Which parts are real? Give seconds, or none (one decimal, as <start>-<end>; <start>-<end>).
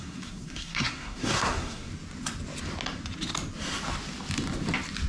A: 1.9-5.1